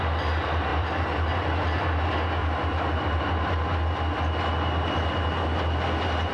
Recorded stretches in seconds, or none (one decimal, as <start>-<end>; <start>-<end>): 0.0-0.7; 1.3-2.4; 3.2-6.3